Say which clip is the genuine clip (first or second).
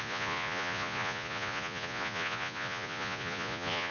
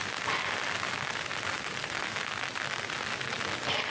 second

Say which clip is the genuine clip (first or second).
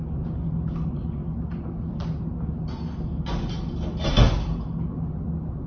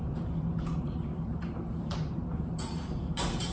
first